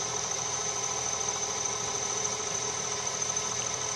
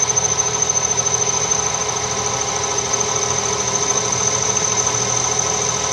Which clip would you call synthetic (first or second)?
first